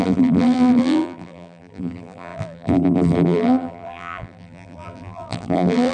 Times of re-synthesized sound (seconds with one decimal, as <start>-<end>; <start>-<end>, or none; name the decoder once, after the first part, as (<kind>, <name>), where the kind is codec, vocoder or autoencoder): 0.0-5.9 (vocoder, BigVGAN v2)